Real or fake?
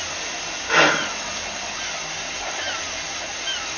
real